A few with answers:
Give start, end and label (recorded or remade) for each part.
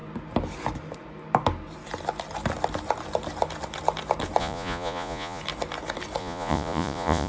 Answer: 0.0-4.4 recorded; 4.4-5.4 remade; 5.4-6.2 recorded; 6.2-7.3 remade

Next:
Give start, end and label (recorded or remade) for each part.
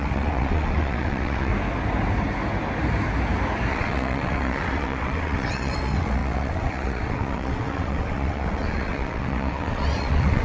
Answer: 0.0-1.5 remade; 1.5-3.7 recorded; 3.7-10.4 remade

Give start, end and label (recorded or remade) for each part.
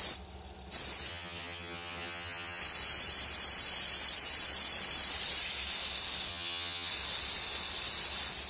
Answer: 0.0-1.1 recorded; 1.1-2.6 remade; 2.6-6.3 recorded; 6.3-6.9 remade; 6.9-8.5 recorded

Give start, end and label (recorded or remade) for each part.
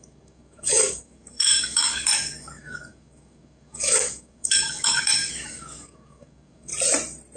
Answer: 0.0-6.7 remade; 6.7-7.4 recorded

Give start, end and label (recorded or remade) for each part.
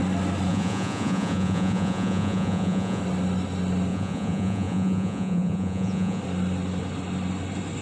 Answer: 0.0-0.5 recorded; 0.5-3.0 remade; 3.0-3.9 recorded; 3.9-6.2 remade; 6.2-7.8 recorded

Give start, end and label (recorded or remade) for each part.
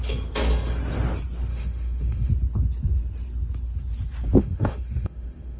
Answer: 0.0-1.5 recorded; 1.5-2.3 remade; 2.3-4.4 recorded; 4.4-5.6 remade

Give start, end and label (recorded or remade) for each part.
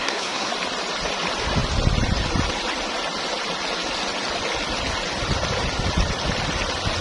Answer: 0.0-0.5 remade; 0.5-7.0 recorded